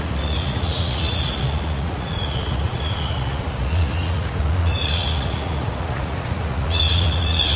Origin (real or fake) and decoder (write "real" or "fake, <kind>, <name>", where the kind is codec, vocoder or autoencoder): fake, vocoder, Vocos